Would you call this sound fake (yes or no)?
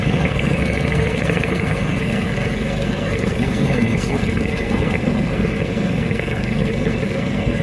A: yes